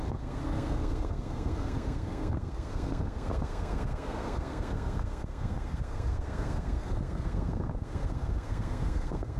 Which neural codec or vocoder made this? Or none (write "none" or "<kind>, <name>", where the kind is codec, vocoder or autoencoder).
codec, SNAC